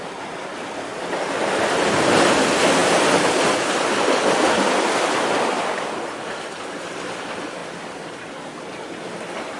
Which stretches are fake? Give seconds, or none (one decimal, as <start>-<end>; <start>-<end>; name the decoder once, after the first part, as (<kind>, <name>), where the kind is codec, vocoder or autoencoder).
0.0-0.9 (vocoder, BigVGAN v2); 1.6-7.6; 8.6-9.6